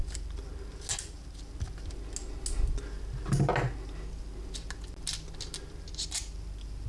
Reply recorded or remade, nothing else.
recorded